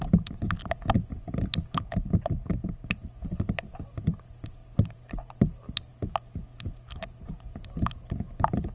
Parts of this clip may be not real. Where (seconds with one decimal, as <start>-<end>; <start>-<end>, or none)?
none